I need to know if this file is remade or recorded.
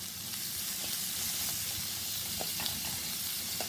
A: recorded